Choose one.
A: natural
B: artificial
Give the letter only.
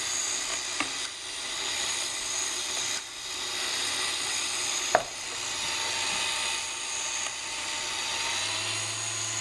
A